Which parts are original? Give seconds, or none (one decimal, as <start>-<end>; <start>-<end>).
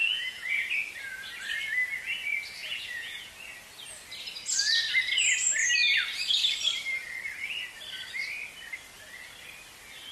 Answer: 0.5-2.6; 3.3-10.1